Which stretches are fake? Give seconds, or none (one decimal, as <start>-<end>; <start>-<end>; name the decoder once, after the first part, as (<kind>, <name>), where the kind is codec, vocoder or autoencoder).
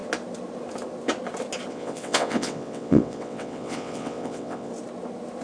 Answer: 1.7-4.7 (vocoder, WaveNeXt)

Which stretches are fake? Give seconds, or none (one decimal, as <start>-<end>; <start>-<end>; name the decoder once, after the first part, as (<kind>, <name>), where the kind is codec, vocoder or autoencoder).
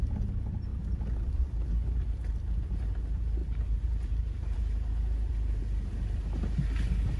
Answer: 3.4-4.6 (vocoder, BigVGAN v2)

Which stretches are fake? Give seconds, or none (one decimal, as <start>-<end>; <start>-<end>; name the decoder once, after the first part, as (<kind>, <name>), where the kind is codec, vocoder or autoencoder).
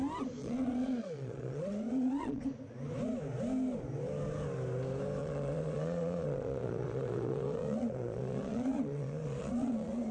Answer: 0.4-2.4 (vocoder, Vocos); 5.2-10.1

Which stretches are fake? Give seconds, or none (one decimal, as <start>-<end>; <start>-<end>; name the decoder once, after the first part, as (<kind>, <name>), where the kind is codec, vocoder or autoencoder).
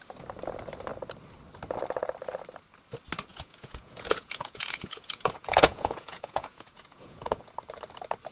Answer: 3.3-7.5 (vocoder, Vocos)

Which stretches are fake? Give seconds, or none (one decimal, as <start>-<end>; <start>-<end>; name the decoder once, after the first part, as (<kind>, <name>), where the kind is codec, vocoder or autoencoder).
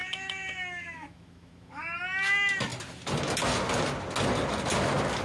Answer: 0.0-2.0 (autoencoder, DAC-VAE)